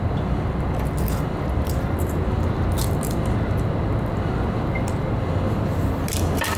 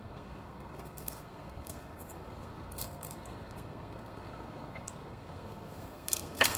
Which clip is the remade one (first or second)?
second